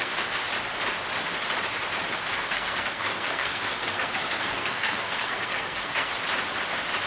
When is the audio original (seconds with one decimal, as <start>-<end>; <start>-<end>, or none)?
0.4-2.1; 6.1-7.1